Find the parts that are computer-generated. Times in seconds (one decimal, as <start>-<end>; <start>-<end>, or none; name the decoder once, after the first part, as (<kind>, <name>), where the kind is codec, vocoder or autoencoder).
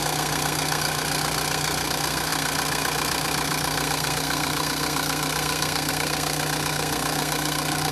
0.0-7.9 (codec, SNAC)